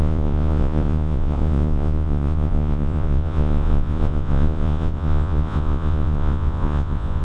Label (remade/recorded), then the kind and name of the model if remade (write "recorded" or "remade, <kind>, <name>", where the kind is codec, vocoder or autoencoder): remade, vocoder, Vocos